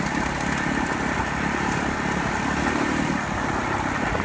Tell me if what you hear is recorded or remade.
recorded